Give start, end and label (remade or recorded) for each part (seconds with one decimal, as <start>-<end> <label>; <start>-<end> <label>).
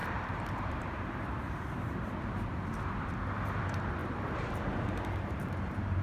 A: 0.0-3.6 remade; 3.6-4.0 recorded; 4.0-6.0 remade